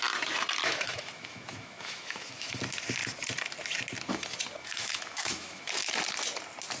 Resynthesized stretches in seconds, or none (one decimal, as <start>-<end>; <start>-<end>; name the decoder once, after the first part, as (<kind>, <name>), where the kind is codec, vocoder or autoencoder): 0.6-2.6 (autoencoder, DAC-VAE); 4.6-5.9